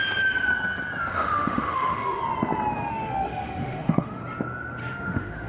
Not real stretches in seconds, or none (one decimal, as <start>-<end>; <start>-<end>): 1.1-2.2; 2.9-4.2; 4.8-5.5